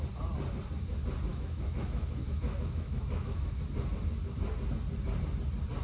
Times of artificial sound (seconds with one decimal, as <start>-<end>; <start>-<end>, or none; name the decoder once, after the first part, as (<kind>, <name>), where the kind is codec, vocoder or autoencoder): 1.3-3.6 (autoencoder, DAC-VAE)